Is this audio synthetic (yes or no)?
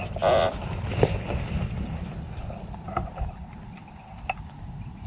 no